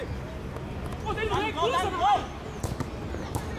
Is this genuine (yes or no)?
yes